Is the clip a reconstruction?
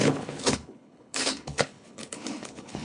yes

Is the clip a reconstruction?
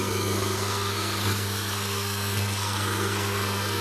yes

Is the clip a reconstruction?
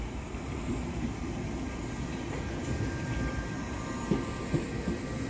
no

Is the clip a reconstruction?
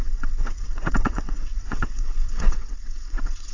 yes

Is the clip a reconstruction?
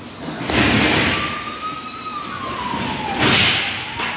no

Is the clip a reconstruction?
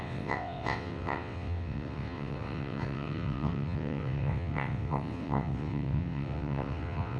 yes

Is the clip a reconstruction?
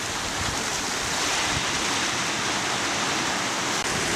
no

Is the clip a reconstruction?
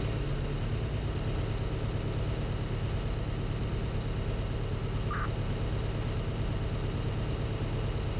no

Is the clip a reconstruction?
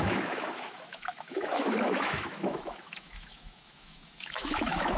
yes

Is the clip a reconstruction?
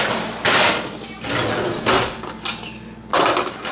no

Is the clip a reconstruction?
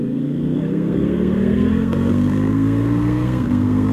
yes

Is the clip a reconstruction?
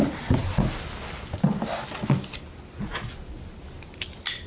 no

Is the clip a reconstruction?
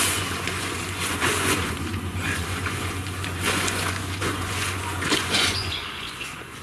yes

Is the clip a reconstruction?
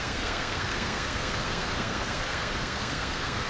yes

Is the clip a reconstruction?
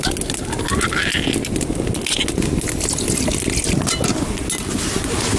no